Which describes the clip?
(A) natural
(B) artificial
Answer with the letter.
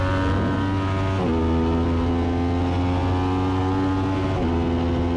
A